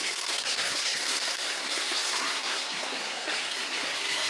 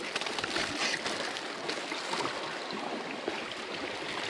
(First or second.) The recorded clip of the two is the second